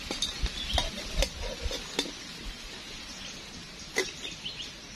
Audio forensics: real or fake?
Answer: real